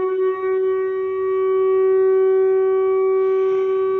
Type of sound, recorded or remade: recorded